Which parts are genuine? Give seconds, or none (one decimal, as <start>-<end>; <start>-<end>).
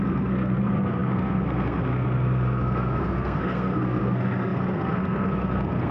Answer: none